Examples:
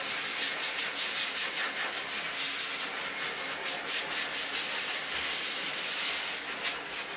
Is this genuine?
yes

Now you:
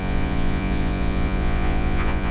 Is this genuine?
no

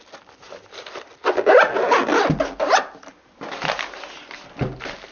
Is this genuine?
yes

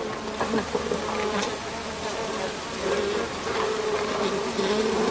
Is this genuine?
yes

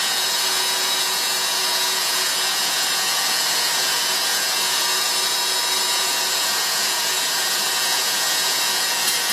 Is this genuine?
no